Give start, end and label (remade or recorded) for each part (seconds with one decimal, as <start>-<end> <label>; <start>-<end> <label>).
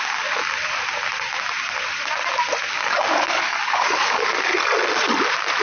0.0-0.4 remade; 0.4-2.7 recorded; 2.7-4.5 remade; 4.5-5.6 recorded